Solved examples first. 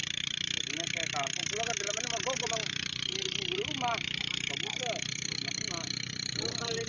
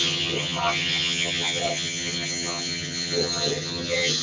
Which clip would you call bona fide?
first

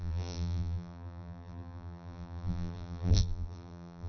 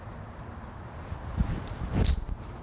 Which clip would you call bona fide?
second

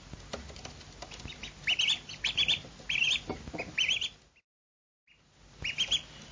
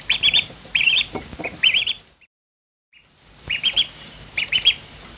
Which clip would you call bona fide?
first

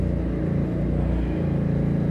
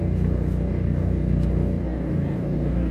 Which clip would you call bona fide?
first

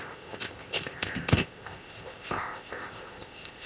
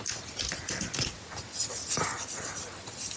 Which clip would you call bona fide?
second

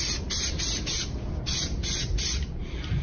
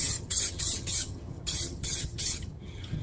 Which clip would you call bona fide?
first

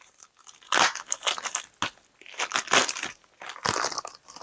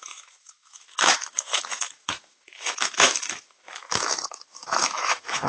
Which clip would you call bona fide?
first